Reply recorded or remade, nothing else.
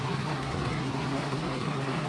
remade